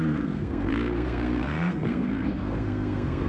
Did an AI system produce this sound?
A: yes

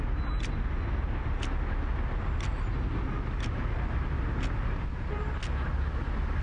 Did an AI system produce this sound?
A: no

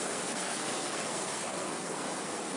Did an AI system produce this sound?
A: yes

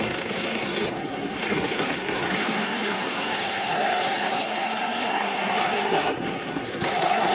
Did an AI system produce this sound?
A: yes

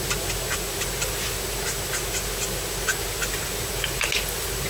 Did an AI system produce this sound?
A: no